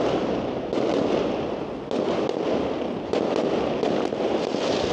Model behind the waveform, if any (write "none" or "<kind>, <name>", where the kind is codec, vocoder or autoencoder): none